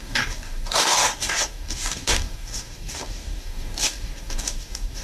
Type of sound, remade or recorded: remade